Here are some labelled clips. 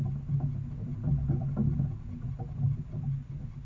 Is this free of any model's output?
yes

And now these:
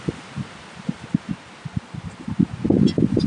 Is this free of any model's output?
yes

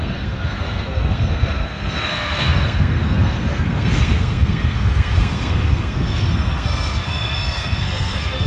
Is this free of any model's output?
no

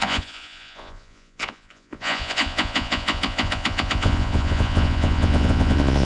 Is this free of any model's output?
no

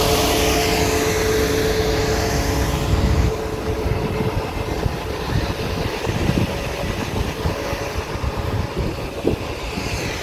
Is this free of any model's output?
yes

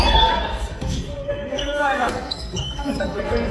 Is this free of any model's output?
no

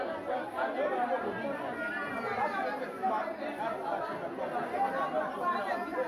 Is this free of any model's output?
yes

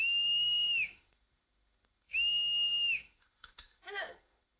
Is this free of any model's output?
no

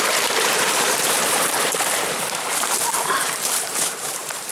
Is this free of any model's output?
no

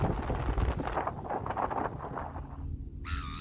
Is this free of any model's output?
yes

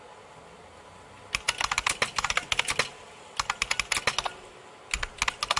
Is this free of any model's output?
yes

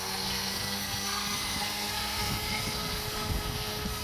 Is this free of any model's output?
no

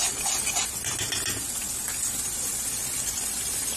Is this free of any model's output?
yes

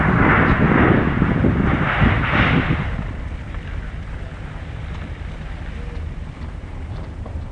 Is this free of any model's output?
no